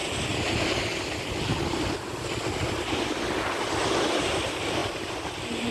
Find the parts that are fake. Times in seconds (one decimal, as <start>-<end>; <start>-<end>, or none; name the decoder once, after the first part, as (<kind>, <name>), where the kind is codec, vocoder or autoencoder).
none